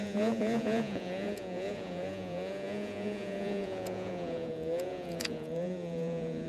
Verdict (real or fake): fake